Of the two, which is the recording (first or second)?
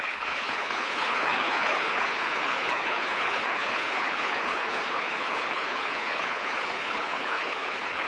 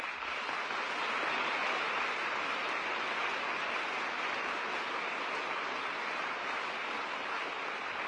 second